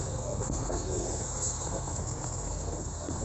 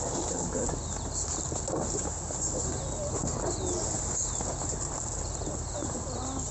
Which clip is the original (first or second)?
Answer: second